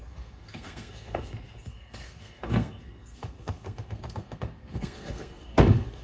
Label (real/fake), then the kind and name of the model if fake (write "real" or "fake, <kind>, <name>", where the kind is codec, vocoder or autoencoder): fake, codec, SNAC